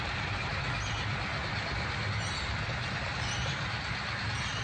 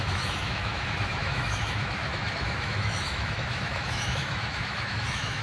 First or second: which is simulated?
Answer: second